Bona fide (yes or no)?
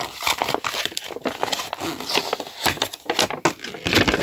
yes